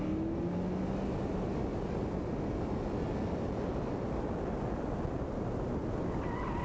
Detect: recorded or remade recorded